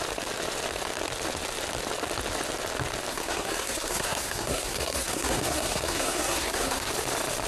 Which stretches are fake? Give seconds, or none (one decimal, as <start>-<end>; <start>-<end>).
3.1-6.9